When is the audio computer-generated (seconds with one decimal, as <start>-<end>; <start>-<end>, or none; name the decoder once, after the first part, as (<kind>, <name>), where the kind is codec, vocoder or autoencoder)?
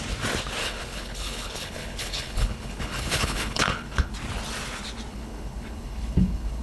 0.6-4.1 (codec, HILCodec); 5.1-6.6